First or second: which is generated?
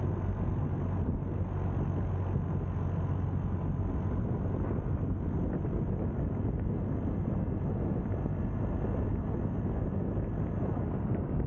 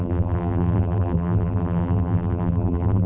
second